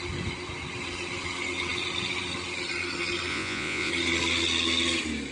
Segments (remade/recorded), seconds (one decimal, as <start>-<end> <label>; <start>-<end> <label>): 0.0-3.3 recorded; 3.3-3.9 remade; 3.9-5.3 recorded